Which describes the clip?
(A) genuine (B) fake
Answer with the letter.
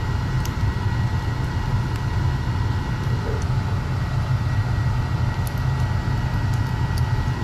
A